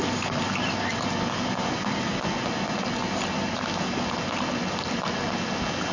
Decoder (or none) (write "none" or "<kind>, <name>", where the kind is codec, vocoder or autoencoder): none